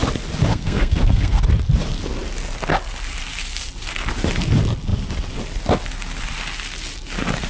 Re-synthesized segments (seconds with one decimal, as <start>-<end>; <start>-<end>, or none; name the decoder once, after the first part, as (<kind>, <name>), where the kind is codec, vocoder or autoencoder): 0.5-1.4 (codec, SNAC)

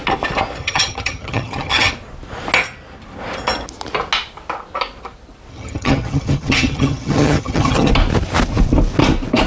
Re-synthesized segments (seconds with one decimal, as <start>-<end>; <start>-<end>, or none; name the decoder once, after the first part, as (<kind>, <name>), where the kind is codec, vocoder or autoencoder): 0.6-1.9 (vocoder, HiFi-GAN); 5.5-7.9

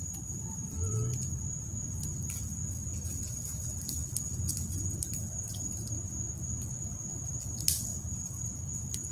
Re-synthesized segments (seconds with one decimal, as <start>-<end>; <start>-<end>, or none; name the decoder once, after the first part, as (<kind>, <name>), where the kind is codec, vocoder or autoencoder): 7.9-8.7 (vocoder, BigVGAN v2)

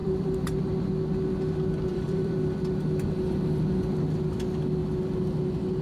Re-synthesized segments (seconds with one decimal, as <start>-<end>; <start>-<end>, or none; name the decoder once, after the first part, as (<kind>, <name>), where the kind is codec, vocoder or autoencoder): 0.0-0.6 (vocoder, BigVGAN v2); 1.9-2.6

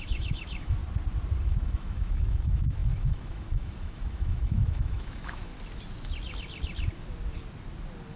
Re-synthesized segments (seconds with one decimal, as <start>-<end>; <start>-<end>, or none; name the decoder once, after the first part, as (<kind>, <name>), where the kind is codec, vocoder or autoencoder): 0.0-0.8 (autoencoder, DAC-VAE); 1.4-5.5

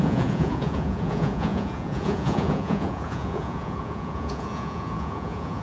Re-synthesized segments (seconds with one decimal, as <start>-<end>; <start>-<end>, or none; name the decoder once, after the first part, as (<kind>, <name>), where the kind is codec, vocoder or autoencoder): 0.0-5.6 (vocoder, Vocos)

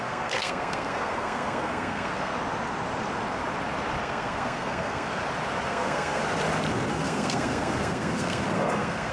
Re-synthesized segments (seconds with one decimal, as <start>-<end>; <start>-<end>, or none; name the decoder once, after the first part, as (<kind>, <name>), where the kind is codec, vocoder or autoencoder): 0.0-2.3 (codec, SNAC); 4.0-5.2; 5.7-6.2; 6.9-9.1